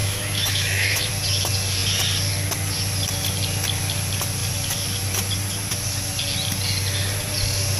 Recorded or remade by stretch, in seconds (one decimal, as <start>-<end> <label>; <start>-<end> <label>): 0.0-1.1 remade; 1.1-7.8 recorded